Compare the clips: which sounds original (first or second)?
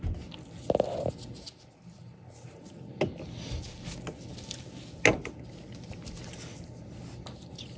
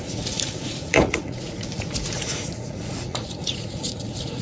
first